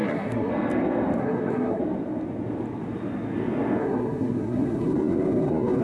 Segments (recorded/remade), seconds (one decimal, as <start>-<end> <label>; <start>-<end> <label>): 0.0-0.5 remade; 0.5-1.2 recorded; 1.2-1.8 remade; 1.8-3.8 recorded; 3.8-5.8 remade